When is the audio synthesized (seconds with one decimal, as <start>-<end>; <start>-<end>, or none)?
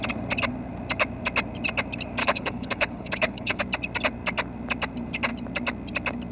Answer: 2.2-3.6